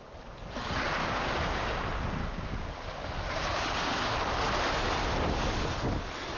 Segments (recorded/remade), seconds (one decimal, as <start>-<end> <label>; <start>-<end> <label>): 0.0-1.0 recorded; 1.0-1.8 remade; 1.8-2.2 recorded; 2.2-4.2 remade; 4.2-6.4 recorded

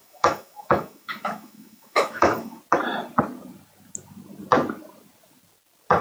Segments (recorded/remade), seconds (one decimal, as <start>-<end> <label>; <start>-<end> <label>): 0.0-2.6 remade; 2.6-6.0 recorded

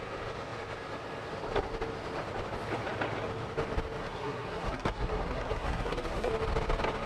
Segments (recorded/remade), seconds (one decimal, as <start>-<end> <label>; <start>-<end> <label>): 0.0-4.0 recorded; 4.0-6.3 remade; 6.3-7.1 recorded

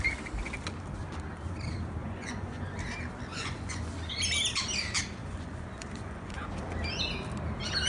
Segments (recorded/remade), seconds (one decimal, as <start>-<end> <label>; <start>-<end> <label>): 0.0-2.0 recorded; 2.0-2.8 remade; 2.8-3.3 recorded; 3.3-3.8 remade; 3.8-5.2 recorded; 5.2-6.5 remade; 6.5-7.9 recorded

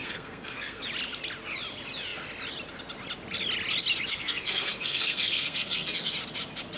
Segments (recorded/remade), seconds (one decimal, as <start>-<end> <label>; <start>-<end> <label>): 0.0-0.8 remade; 0.8-4.1 recorded; 4.1-6.1 remade; 6.1-6.8 recorded